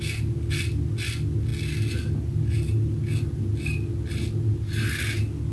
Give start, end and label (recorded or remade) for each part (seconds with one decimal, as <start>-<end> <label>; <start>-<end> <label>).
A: 0.0-5.5 recorded